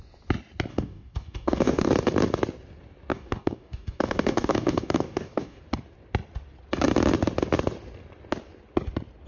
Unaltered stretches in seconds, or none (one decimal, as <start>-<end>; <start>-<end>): 0.0-0.7; 1.9-3.1; 5.6-9.3